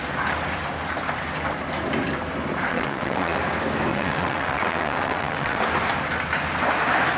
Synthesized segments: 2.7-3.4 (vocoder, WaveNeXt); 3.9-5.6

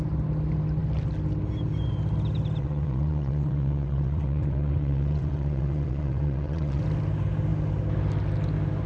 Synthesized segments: 2.6-6.8 (vocoder, WaveNeXt)

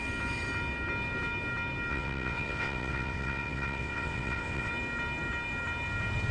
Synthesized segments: 1.9-4.7 (vocoder, WaveNeXt)

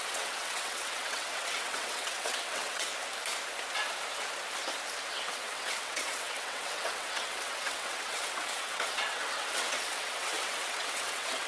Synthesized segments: 0.0-2.9 (vocoder, WaveNeXt); 5.1-11.5

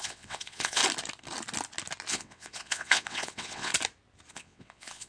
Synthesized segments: 0.0-0.8 (vocoder, WaveNeXt); 2.1-3.7; 4.3-5.1

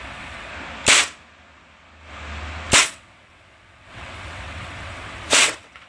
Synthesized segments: 0.0-0.5 (vocoder, WaveNeXt); 2.8-5.9